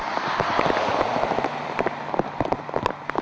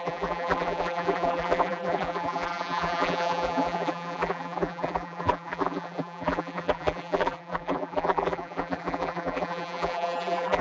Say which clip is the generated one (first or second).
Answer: second